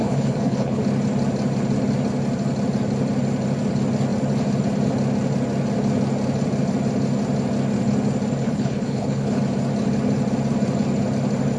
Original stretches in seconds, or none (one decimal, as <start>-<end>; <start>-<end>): 0.8-8.4; 9.4-11.6